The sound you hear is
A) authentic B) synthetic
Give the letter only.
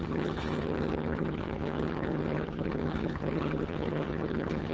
B